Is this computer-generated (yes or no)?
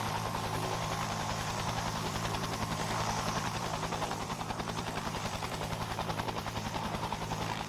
yes